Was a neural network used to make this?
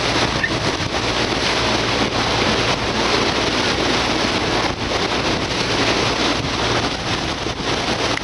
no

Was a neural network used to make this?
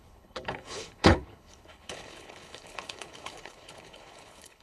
yes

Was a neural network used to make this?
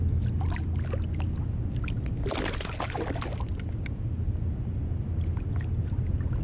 no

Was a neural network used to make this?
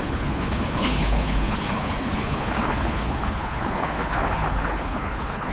yes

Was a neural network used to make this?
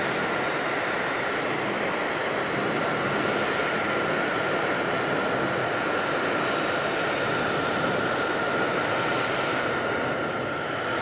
no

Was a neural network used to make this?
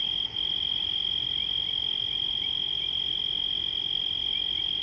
no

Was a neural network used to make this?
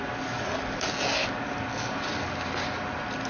no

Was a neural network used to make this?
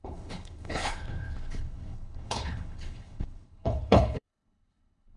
yes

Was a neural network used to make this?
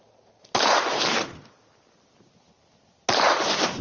no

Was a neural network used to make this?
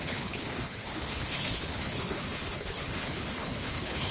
yes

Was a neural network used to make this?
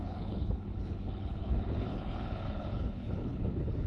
yes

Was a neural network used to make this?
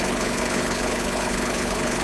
yes